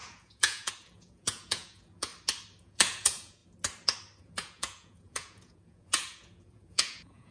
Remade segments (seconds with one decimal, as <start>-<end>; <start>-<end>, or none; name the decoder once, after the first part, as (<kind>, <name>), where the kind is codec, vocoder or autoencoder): 0.0-2.1 (vocoder, Vocos); 2.6-3.4; 4.2-7.3